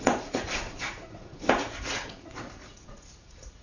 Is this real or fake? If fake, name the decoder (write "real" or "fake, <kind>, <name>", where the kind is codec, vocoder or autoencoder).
fake, vocoder, Vocos